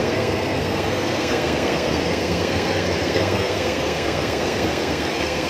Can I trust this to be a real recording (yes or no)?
no